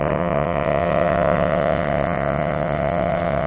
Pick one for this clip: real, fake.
fake